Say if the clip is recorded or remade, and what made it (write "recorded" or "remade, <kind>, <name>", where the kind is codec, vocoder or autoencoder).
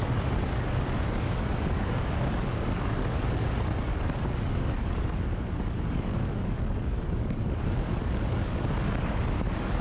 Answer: remade, codec, DAC